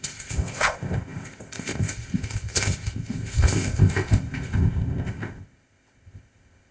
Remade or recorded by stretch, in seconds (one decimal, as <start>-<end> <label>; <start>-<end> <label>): 0.0-6.7 remade